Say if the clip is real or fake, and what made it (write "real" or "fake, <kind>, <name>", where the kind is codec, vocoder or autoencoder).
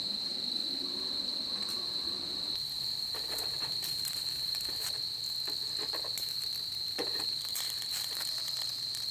fake, vocoder, BigVGAN v2